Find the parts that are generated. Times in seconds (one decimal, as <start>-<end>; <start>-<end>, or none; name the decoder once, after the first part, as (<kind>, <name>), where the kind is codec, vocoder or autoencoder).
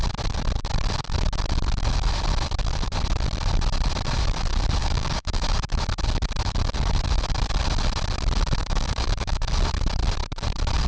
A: 4.8-5.5 (codec, DAC); 8.6-9.5